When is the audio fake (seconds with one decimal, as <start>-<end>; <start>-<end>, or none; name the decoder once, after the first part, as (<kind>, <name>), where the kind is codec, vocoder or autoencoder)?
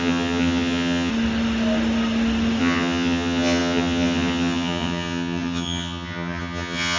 0.0-1.1 (vocoder, HiFi-GAN); 2.6-7.0